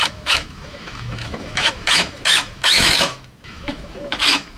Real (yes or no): no